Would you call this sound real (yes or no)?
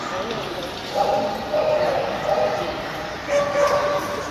yes